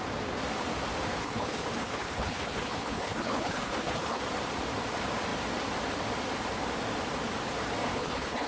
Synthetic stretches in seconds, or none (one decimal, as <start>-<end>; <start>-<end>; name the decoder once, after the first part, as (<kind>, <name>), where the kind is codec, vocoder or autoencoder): 1.2-4.2 (codec, HILCodec); 7.9-8.5